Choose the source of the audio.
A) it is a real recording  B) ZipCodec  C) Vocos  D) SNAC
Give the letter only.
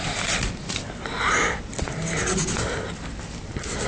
A